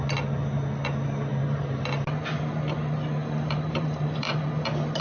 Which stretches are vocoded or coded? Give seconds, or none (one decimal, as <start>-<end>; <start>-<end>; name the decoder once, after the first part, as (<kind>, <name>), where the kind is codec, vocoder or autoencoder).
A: 1.3-1.8 (vocoder, BigVGAN v2); 3.2-4.5